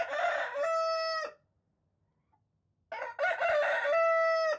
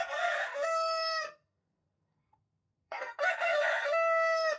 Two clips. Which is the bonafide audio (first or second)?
first